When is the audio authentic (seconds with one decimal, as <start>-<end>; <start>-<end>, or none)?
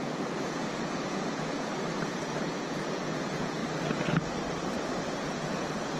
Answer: 1.7-2.5; 3.6-5.1